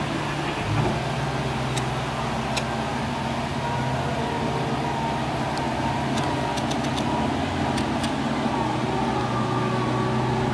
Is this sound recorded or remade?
recorded